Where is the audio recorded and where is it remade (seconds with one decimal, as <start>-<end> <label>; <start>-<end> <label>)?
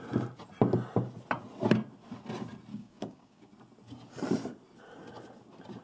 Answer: 0.0-2.7 recorded; 2.7-3.5 remade; 3.5-5.8 recorded